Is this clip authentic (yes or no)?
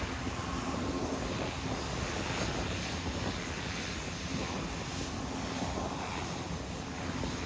yes